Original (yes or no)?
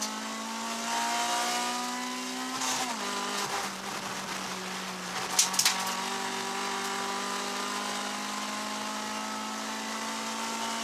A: yes